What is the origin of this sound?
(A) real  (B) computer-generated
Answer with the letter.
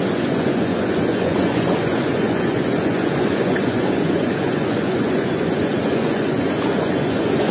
B